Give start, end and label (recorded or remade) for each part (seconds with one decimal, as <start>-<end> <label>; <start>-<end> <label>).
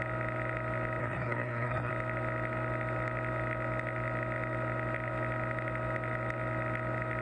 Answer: 0.0-1.0 recorded; 1.0-1.9 remade; 1.9-7.2 recorded